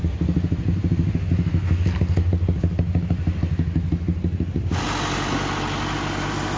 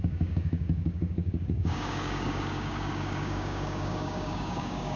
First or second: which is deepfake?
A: second